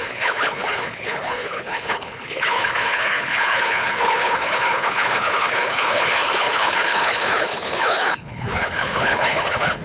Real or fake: fake